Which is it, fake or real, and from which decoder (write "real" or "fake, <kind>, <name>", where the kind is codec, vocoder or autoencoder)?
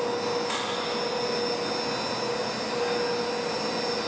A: real